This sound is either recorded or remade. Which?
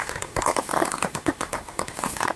remade